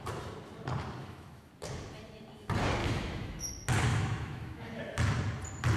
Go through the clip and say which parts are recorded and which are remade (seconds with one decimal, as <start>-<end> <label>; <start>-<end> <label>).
0.0-1.0 recorded; 1.0-1.5 remade; 1.5-2.8 recorded; 2.8-3.5 remade; 3.5-3.9 recorded; 3.9-4.8 remade; 4.8-5.8 recorded